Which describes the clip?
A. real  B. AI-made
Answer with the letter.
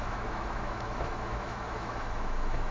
B